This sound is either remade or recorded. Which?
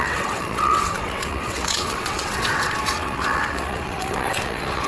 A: remade